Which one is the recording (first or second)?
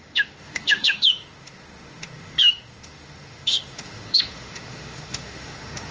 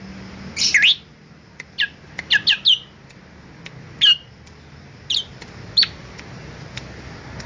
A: second